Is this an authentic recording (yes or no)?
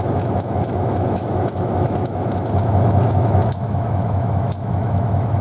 no